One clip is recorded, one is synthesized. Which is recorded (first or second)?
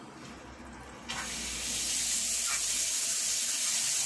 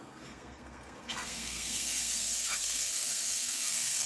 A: first